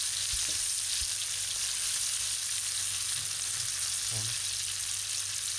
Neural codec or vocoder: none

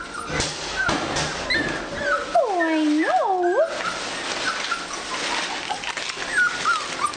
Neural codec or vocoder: none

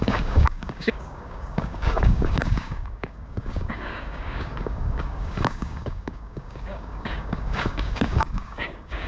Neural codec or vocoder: codec, DAC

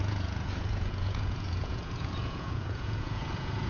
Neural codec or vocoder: vocoder, Vocos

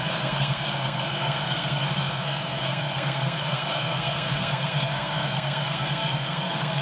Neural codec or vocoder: codec, SNAC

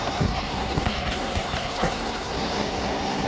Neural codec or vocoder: codec, SNAC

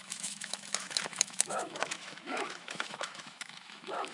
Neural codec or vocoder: autoencoder, DAC-VAE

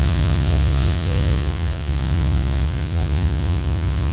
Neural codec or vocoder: vocoder, Vocos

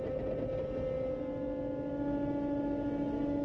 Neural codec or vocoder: none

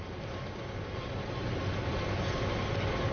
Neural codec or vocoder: none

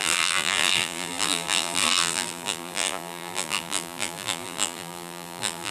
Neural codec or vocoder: vocoder, BigVGAN v2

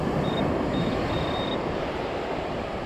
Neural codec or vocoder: vocoder, BigVGAN v2